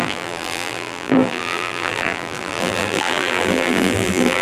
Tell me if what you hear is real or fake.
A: fake